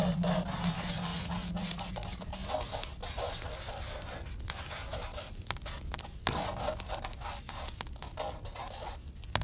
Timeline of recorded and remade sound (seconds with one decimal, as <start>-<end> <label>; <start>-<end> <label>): 0.0-1.1 recorded; 1.1-1.9 remade; 1.9-9.4 recorded